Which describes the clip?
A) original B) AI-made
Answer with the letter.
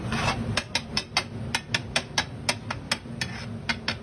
A